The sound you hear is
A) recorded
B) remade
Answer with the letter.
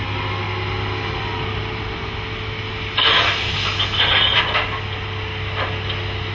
A